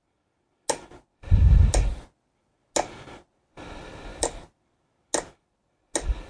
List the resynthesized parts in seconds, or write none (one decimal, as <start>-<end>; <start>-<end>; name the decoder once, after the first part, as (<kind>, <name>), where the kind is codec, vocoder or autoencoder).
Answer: none